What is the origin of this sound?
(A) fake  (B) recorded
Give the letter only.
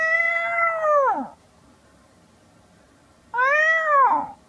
B